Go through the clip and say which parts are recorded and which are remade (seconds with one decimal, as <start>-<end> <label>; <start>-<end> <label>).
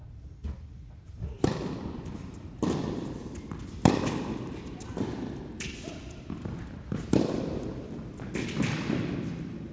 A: 0.0-9.7 recorded